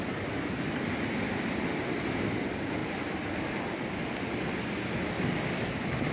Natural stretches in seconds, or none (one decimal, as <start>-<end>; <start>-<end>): 0.0-6.1